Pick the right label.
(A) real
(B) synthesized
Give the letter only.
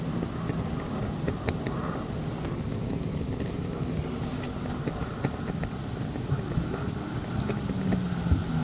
A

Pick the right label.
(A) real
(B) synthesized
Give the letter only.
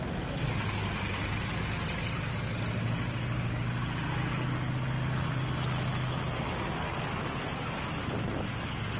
A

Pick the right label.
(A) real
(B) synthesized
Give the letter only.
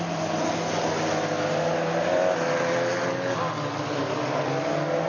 A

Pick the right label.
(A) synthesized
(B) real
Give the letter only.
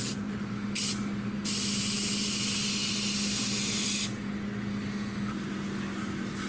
B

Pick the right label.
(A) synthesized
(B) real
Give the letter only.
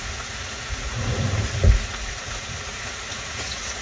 A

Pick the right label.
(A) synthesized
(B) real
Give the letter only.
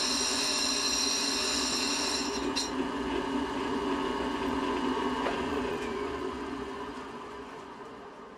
A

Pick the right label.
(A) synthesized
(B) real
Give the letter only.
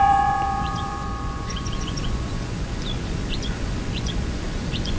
A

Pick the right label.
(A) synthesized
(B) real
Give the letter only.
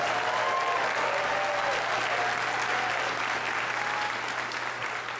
B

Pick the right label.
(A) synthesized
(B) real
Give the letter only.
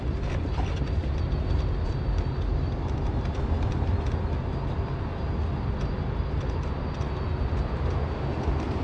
B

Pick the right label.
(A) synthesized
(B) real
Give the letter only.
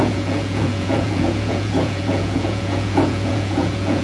A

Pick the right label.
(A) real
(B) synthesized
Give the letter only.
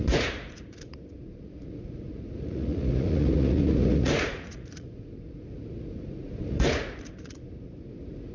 B